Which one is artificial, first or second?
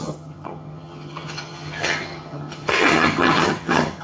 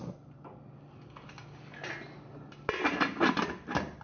first